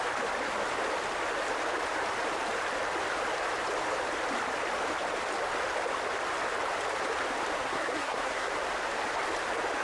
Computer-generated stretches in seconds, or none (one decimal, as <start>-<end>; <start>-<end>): 7.6-8.5